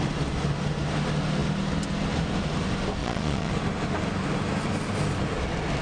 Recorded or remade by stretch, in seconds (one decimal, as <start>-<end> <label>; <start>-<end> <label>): 0.0-3.0 recorded; 3.0-3.5 remade; 3.5-5.8 recorded